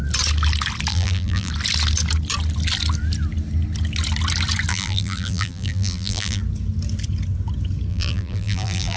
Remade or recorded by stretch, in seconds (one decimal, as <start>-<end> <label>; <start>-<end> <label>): 0.0-0.9 recorded; 0.9-1.5 remade; 1.5-4.7 recorded; 4.7-6.4 remade; 6.4-7.9 recorded; 7.9-9.0 remade